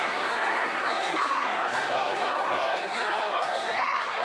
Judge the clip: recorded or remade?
remade